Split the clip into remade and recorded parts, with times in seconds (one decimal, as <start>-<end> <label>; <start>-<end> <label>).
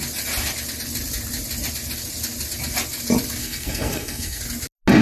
0.0-3.4 recorded; 3.4-4.4 remade; 4.4-5.0 recorded